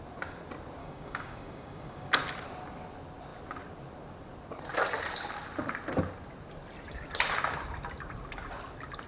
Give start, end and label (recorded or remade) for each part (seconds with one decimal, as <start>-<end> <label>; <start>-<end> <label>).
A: 0.0-0.8 recorded; 0.8-2.1 remade; 2.1-9.1 recorded